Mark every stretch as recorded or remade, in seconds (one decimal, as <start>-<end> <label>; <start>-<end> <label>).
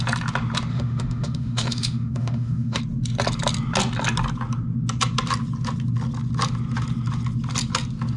0.0-0.7 recorded; 0.7-2.8 remade; 2.8-8.2 recorded